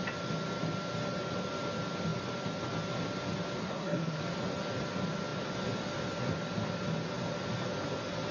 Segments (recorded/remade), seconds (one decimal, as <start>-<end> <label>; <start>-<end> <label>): 0.0-3.6 recorded; 3.6-4.2 remade; 4.2-8.3 recorded